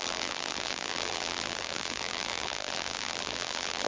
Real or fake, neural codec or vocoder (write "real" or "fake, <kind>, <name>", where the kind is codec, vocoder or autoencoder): fake, vocoder, BigVGAN v2